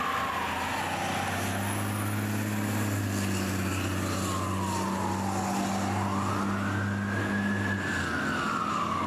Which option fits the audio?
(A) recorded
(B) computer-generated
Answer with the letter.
A